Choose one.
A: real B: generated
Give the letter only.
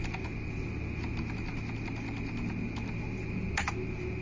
A